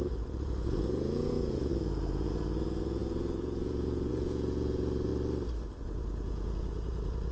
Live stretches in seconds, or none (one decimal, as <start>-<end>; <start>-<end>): 5.1-5.8